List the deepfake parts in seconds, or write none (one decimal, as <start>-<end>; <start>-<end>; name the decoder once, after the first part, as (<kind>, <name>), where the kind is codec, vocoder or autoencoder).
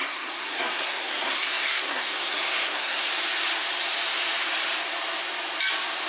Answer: 0.0-3.1 (codec, SNAC)